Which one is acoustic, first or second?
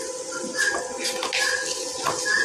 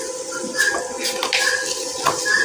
first